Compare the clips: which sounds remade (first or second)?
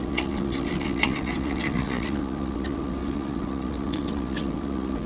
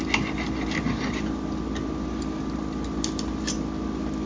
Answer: first